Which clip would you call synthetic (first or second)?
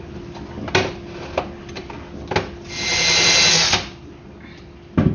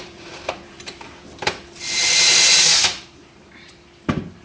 second